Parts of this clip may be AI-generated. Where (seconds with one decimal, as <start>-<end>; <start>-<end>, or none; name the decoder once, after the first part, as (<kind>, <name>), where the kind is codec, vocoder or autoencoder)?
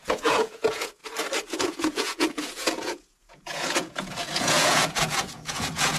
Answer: 0.0-1.0 (vocoder, Vocos); 1.5-6.0